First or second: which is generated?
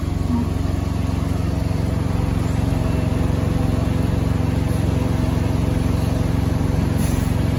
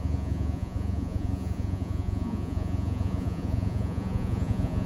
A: second